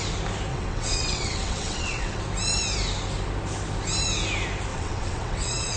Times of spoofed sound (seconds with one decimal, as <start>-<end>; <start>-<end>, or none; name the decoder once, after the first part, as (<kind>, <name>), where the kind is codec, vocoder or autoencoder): 0.5-2.2 (vocoder, WaveNeXt); 4.7-5.8